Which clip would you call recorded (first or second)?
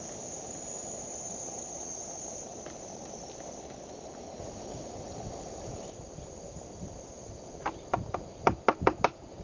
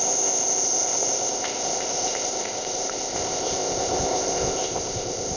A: first